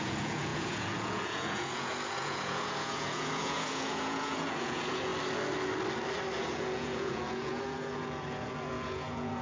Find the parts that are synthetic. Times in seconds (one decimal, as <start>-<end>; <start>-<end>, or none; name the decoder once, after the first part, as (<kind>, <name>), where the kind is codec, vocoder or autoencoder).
0.0-5.1 (vocoder, Vocos); 6.4-9.4